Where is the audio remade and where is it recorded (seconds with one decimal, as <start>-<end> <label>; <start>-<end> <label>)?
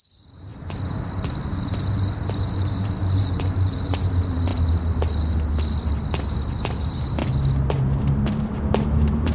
0.0-0.5 remade; 0.5-2.5 recorded; 2.5-4.5 remade; 4.5-6.6 recorded; 6.6-7.2 remade; 7.2-7.7 recorded; 7.7-9.3 remade